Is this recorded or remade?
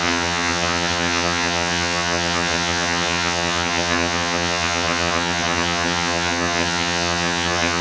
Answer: remade